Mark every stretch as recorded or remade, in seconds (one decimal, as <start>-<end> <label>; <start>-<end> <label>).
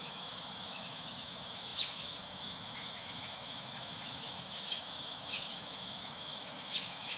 0.0-7.2 remade